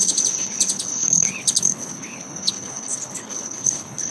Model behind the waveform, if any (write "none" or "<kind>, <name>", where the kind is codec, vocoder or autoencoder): codec, HILCodec